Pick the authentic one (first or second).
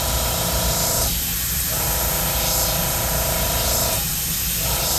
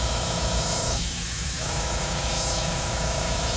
first